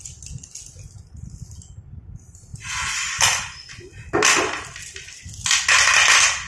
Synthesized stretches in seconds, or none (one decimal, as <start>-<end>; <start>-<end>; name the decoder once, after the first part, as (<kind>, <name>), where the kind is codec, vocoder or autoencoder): none